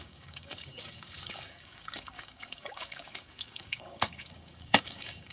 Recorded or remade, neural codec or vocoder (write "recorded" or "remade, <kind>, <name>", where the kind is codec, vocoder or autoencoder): remade, codec, DAC